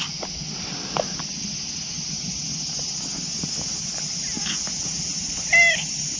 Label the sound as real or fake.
real